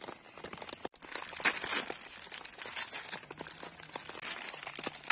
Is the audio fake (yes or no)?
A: no